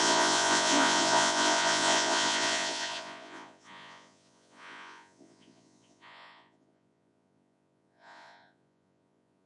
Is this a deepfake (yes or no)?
yes